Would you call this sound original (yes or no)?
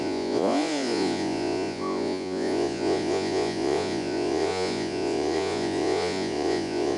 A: no